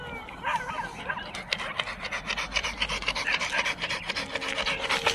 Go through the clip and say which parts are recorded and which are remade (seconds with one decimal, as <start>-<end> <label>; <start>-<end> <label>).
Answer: 0.0-5.1 recorded